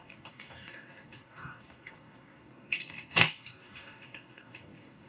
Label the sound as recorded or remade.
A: remade